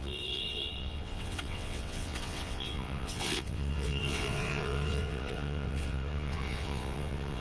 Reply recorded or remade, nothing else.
remade